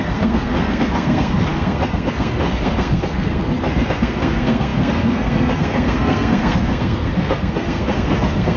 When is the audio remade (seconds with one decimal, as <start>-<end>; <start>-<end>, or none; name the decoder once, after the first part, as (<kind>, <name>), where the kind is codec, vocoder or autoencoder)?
0.0-8.6 (codec, SNAC)